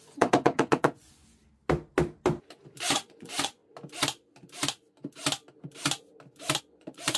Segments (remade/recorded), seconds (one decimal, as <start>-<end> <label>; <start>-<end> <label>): 0.0-1.4 remade; 1.4-2.8 recorded; 2.8-3.6 remade; 3.6-6.6 recorded; 6.6-7.2 remade